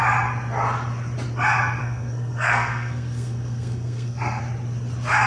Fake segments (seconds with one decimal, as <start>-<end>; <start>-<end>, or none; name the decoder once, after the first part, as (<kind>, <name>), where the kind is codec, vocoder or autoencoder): 1.8-4.4 (codec, SNAC)